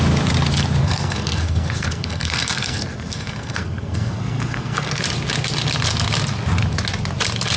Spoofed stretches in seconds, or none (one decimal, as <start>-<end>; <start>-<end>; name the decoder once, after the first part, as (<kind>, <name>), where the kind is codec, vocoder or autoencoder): 0.8-5.0 (codec, SNAC)